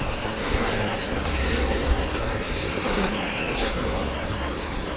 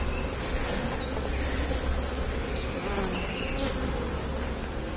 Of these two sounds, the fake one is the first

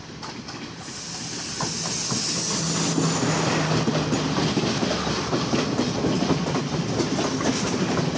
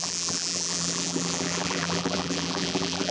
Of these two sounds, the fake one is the second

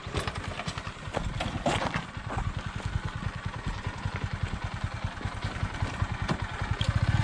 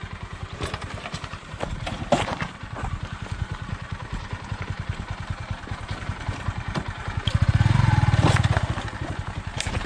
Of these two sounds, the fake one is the second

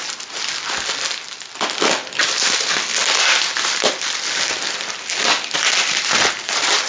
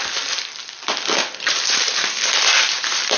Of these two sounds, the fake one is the second